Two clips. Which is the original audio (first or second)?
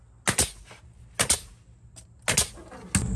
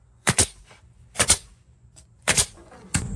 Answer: first